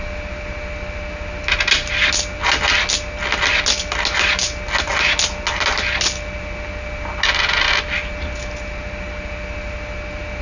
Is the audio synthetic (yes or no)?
no